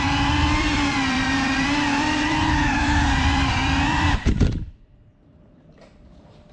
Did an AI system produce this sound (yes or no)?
yes